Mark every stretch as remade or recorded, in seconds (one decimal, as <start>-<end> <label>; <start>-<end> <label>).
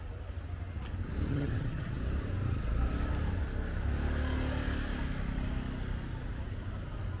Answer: 0.0-1.3 recorded; 1.3-1.9 remade; 1.9-7.2 recorded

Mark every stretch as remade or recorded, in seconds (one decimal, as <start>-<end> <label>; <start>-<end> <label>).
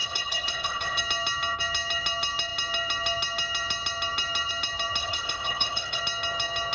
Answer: 0.0-1.0 remade; 1.0-5.0 recorded; 5.0-6.0 remade; 6.0-6.7 recorded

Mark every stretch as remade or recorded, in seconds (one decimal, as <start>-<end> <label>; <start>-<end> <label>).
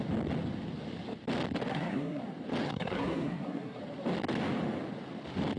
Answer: 0.0-1.7 recorded; 1.7-2.2 remade; 2.2-2.6 recorded; 2.6-3.8 remade; 3.8-5.6 recorded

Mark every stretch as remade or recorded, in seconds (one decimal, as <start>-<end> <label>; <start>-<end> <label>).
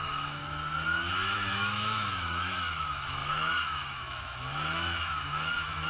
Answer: 0.0-0.4 remade; 0.4-1.1 recorded; 1.1-5.9 remade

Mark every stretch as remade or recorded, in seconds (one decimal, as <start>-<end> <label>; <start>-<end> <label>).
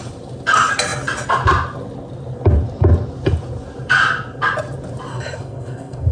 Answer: 0.0-5.1 recorded; 5.1-6.1 remade